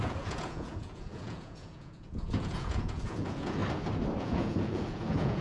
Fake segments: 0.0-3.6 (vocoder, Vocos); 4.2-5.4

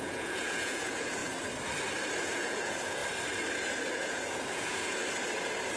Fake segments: 0.0-1.2 (vocoder, Vocos); 2.2-3.0; 3.9-5.0

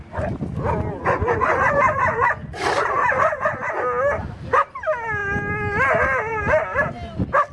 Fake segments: 1.0-2.6 (vocoder, Vocos); 3.0-3.7